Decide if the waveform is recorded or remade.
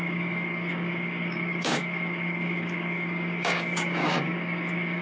remade